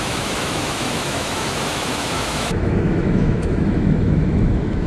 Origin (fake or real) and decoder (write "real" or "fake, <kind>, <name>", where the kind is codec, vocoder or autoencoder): fake, autoencoder, DAC-VAE